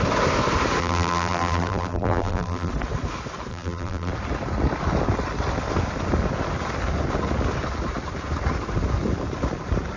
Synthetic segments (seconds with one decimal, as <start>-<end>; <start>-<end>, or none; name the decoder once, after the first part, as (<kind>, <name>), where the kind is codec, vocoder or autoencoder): 0.8-2.7 (vocoder, BigVGAN v2); 3.5-4.1